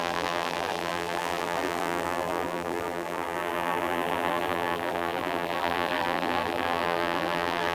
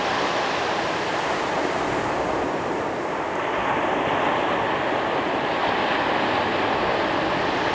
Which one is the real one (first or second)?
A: second